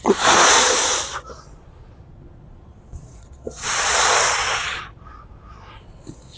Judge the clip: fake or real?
fake